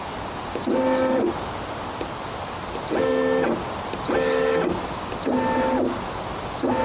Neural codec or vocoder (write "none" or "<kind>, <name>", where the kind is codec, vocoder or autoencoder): none